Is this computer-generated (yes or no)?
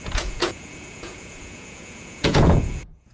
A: yes